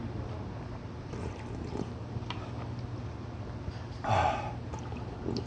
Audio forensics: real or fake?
real